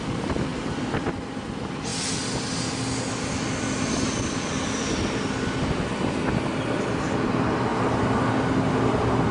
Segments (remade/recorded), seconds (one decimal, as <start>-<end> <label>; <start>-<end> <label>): 0.0-9.3 recorded